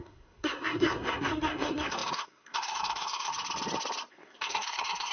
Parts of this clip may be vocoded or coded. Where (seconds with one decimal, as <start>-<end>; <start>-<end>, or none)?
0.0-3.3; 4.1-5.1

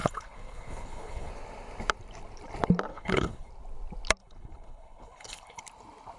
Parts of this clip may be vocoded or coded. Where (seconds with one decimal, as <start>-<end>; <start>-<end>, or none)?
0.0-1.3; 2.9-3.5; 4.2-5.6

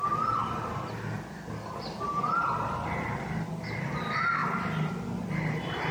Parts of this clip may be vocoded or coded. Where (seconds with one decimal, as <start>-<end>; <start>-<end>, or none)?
none

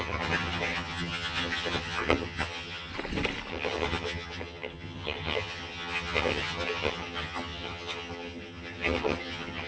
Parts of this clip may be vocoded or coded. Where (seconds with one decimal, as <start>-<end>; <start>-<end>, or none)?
0.0-2.9; 3.5-9.7

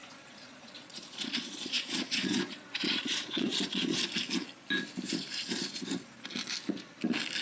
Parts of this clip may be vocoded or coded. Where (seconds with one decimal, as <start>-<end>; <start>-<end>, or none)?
0.0-4.0

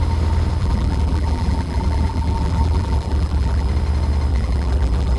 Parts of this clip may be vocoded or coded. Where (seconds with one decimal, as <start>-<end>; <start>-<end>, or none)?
0.6-3.7; 4.3-5.2